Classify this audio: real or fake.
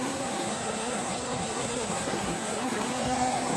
fake